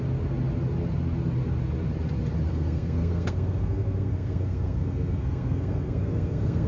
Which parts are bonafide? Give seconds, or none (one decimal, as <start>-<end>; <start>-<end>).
0.0-2.5